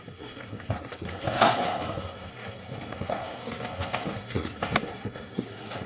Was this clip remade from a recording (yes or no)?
yes